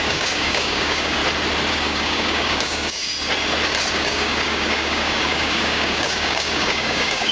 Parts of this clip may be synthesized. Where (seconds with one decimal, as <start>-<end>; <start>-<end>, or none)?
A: 0.0-1.2; 1.7-3.1; 3.9-7.3